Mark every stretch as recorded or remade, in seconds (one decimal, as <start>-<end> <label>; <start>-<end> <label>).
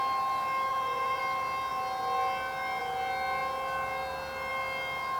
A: 0.0-0.7 recorded; 0.7-1.2 remade; 1.2-5.2 recorded